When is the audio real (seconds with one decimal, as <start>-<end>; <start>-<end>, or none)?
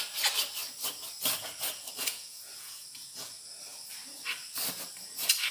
0.0-2.1; 3.3-5.5